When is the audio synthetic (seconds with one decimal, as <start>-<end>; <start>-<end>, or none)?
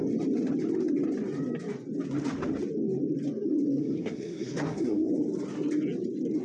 3.8-5.1